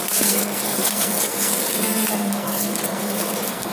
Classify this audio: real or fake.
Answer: fake